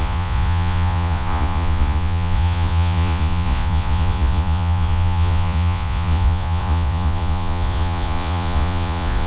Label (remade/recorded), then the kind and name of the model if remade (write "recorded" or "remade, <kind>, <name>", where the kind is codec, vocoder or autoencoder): remade, vocoder, Vocos